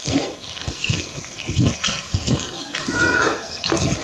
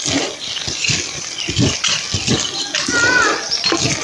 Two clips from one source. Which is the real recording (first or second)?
second